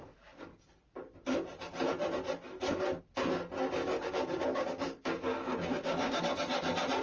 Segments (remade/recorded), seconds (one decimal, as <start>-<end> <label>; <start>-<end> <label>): 0.0-3.8 recorded; 3.8-6.2 remade; 6.2-7.0 recorded